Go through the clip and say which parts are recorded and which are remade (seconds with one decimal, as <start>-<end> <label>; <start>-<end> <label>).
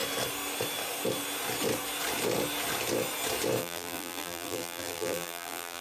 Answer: 0.0-3.6 recorded; 3.6-5.8 remade